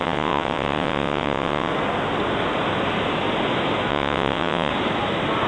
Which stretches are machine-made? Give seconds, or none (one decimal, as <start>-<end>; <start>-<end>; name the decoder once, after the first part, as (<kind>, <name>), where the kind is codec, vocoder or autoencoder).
0.0-1.7 (vocoder, WaveNeXt); 3.9-4.7

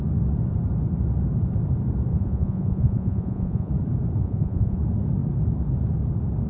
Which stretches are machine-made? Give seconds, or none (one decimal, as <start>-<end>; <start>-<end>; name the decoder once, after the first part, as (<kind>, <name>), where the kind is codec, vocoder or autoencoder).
2.1-3.7 (vocoder, Vocos); 4.2-4.8

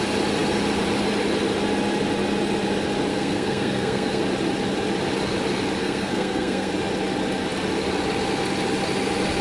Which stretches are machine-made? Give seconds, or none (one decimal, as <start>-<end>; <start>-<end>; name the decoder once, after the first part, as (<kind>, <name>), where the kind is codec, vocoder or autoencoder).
3.1-4.2 (codec, SNAC); 5.8-6.7

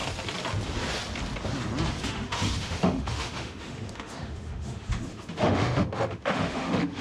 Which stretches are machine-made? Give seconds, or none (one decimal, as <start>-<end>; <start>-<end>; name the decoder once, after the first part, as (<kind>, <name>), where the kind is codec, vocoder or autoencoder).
2.0-7.0 (autoencoder, DAC-VAE)

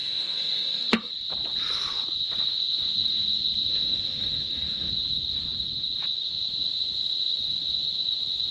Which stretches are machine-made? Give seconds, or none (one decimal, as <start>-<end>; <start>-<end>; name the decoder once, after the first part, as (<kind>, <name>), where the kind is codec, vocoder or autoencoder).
0.0-1.1 (autoencoder, DAC-VAE); 3.7-4.9

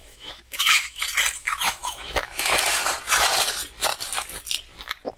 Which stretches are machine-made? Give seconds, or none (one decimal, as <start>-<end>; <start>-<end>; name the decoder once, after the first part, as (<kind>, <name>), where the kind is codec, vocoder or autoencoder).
0.0-1.0 (autoencoder, DAC-VAE); 1.4-2.5

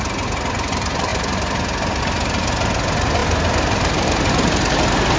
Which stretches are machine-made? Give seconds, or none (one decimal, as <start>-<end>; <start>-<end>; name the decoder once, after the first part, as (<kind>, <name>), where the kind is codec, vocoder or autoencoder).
none